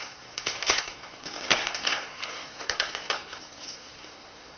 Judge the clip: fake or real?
fake